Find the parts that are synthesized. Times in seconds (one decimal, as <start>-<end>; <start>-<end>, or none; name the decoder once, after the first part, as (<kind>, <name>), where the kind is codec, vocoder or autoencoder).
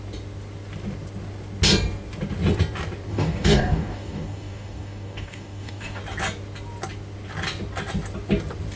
3.1-6.0 (codec, DAC)